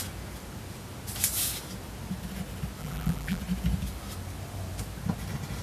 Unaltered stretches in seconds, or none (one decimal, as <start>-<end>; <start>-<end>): 0.0-2.8; 3.4-5.6